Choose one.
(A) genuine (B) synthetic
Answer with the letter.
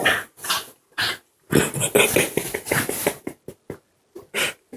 A